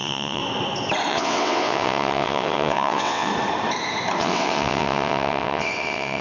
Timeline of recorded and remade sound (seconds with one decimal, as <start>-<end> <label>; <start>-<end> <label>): 0.0-0.4 remade; 0.4-1.1 recorded; 1.1-3.3 remade; 3.3-4.2 recorded; 4.2-6.2 remade